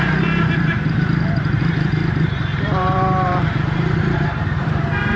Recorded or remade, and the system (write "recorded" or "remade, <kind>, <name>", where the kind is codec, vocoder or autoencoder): remade, vocoder, BigVGAN v2